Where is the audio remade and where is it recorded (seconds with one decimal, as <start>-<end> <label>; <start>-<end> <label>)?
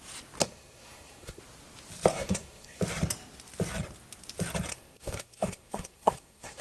0.0-0.4 recorded; 0.4-1.4 remade; 1.4-2.1 recorded; 2.1-2.8 remade; 2.8-4.7 recorded; 4.7-6.6 remade